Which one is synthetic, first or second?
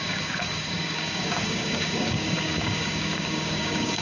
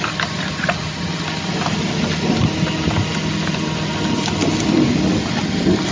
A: first